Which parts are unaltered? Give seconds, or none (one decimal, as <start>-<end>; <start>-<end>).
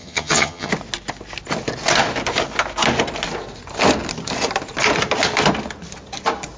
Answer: 0.7-6.6